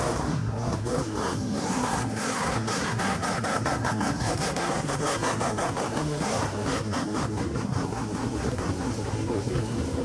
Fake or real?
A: fake